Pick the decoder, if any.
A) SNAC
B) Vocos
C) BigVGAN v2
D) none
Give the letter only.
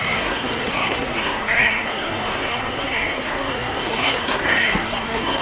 A